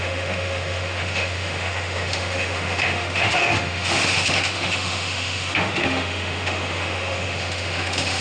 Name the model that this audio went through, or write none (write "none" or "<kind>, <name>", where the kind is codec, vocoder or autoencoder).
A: autoencoder, DAC-VAE